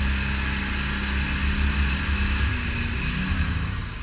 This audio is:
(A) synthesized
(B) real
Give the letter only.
B